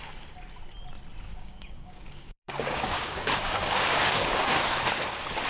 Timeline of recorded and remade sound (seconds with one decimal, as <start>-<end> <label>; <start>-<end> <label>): 0.0-1.3 recorded; 1.3-4.6 remade; 4.6-5.5 recorded